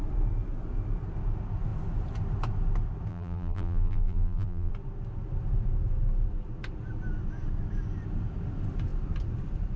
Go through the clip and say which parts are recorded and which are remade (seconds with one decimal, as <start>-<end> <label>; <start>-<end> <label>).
0.0-3.1 recorded; 3.1-4.7 remade; 4.7-9.8 recorded